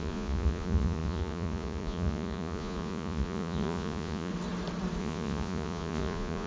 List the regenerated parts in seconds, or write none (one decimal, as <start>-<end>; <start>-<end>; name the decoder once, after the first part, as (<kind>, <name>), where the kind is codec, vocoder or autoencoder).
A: 0.0-4.3 (vocoder, Vocos); 5.0-6.5